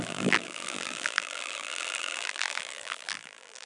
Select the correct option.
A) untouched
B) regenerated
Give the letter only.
B